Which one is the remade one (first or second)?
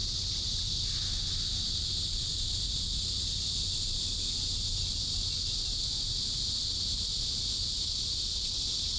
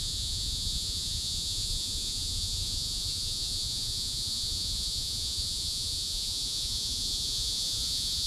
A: second